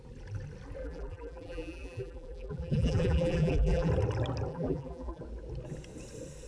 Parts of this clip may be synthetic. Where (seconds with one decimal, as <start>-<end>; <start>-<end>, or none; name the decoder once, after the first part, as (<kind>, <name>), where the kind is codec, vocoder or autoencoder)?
0.8-3.9 (vocoder, BigVGAN v2); 4.5-5.2